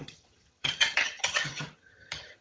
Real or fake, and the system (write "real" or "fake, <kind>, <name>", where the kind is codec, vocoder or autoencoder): fake, vocoder, HiFi-GAN